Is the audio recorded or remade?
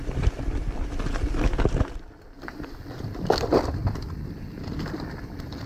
recorded